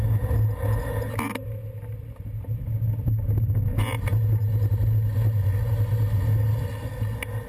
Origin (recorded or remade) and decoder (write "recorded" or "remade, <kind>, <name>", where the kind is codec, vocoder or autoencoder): recorded